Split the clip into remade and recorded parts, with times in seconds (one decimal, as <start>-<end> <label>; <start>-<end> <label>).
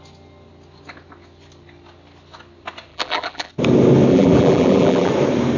0.0-2.9 recorded; 2.9-3.5 remade; 3.5-4.1 recorded; 4.1-5.1 remade; 5.1-5.6 recorded